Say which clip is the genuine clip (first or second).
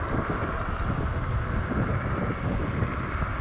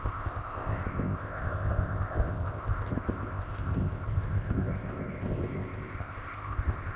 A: first